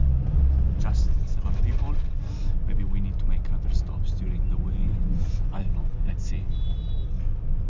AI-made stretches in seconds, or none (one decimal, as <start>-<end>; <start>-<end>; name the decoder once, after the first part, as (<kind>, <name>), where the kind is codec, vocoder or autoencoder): 4.8-6.1 (vocoder, Vocos)